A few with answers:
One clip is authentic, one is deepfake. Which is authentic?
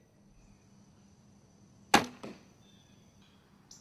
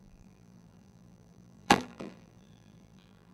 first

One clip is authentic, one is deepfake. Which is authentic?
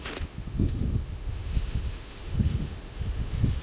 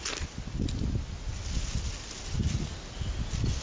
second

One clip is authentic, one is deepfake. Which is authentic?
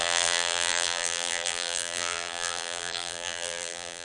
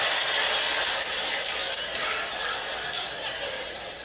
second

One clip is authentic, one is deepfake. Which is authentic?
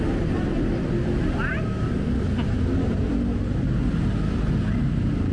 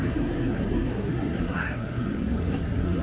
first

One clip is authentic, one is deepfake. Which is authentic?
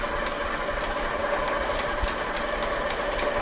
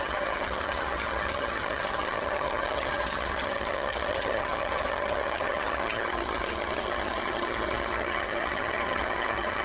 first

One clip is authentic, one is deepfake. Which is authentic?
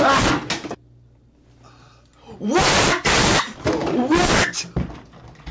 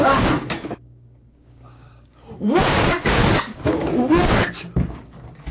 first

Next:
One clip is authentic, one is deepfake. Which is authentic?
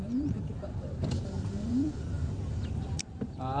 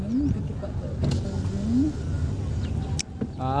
second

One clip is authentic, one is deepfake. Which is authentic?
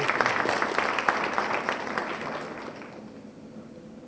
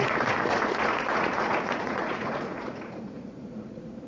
first